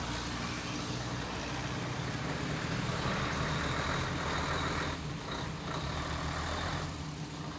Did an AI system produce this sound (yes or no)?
no